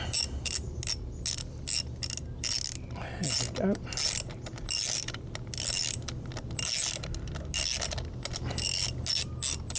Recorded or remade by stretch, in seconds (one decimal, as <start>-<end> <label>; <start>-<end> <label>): 0.0-9.8 recorded